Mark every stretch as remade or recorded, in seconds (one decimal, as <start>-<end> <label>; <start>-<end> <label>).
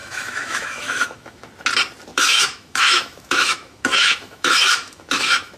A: 0.0-1.5 remade; 1.5-2.1 recorded; 2.1-5.6 remade